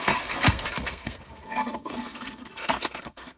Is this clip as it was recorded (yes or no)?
no